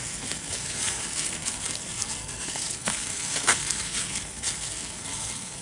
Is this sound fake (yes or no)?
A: yes